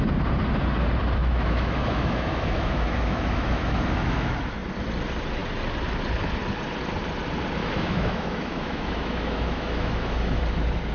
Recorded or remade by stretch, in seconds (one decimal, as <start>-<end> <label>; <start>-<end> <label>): 0.0-1.2 recorded; 1.2-4.3 remade; 4.3-7.6 recorded; 7.6-10.4 remade; 10.4-10.9 recorded